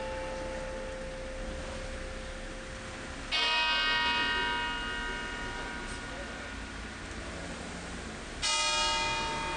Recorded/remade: recorded